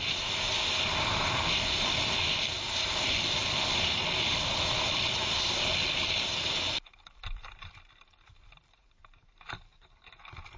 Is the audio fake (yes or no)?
yes